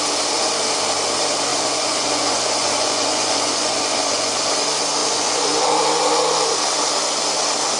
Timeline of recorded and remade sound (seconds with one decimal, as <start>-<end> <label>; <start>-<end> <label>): 0.0-1.5 recorded; 1.5-4.5 remade; 4.5-5.0 recorded; 5.0-5.8 remade; 5.8-7.8 recorded